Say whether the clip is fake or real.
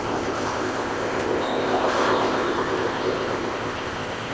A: fake